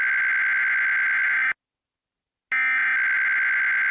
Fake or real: real